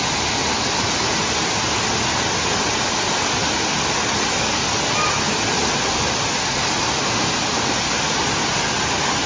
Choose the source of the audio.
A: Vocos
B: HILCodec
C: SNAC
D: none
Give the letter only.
D